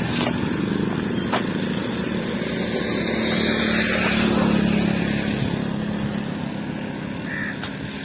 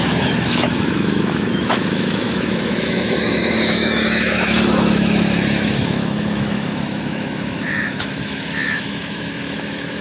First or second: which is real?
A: first